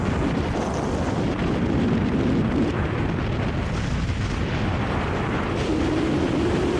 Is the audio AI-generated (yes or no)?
no